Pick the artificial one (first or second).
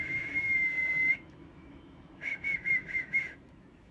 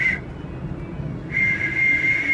first